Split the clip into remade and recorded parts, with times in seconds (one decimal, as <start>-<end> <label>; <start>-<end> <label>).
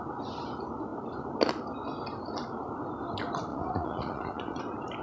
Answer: 0.0-3.5 recorded; 3.5-4.6 remade; 4.6-5.0 recorded